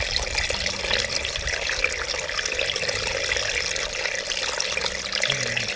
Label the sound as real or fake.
real